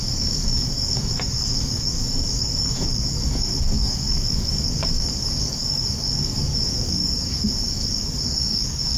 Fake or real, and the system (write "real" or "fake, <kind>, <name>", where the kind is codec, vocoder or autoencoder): fake, codec, DAC